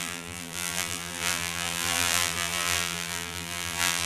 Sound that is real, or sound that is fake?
fake